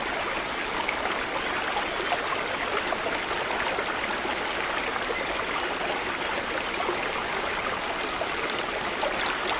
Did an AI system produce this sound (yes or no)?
no